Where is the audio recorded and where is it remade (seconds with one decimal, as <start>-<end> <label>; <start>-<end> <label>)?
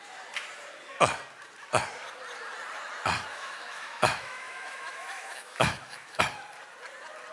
0.0-3.3 recorded; 3.3-6.2 remade; 6.2-7.3 recorded